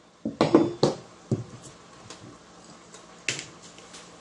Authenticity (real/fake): real